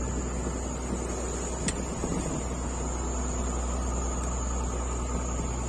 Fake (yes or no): no